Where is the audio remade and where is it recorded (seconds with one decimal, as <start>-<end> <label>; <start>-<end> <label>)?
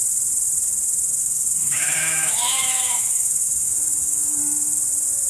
0.0-1.2 recorded; 1.2-4.4 remade; 4.4-5.3 recorded